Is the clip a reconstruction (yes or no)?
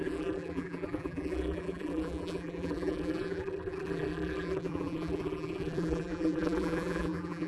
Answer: yes